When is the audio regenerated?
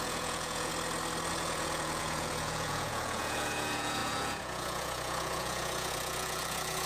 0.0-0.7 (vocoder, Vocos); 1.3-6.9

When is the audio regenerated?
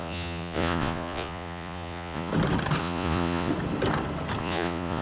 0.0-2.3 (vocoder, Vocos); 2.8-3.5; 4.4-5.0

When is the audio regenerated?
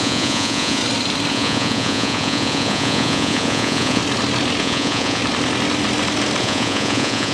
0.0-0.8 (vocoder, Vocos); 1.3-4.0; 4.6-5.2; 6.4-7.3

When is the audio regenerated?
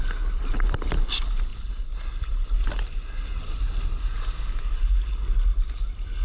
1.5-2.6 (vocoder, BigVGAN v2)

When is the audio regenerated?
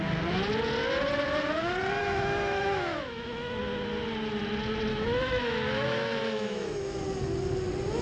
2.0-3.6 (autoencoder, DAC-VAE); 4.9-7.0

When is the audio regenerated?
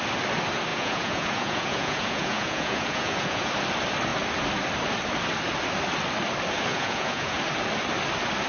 0.7-3.5 (vocoder, Vocos); 6.7-7.4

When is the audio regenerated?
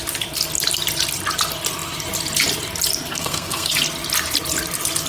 3.1-3.7 (codec, SNAC)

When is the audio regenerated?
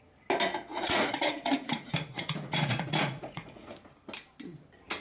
0.7-3.7 (vocoder, Vocos)